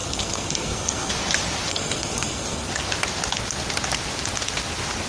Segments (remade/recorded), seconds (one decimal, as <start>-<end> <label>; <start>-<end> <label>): 0.0-1.1 remade; 1.1-1.7 recorded; 1.7-2.7 remade; 2.7-5.1 recorded